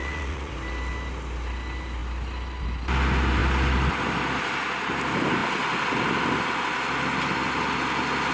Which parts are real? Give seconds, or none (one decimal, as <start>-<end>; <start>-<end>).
0.5-8.3